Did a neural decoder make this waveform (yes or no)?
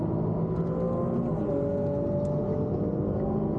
no